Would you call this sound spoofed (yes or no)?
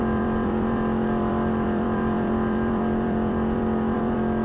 yes